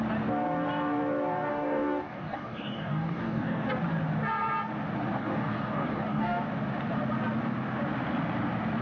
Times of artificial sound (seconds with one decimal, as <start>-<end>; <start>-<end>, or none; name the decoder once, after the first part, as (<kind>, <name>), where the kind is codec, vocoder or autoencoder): 1.5-3.7 (codec, DAC); 5.2-6.4